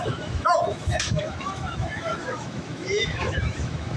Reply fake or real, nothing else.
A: fake